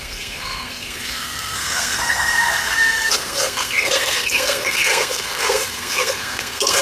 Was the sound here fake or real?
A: fake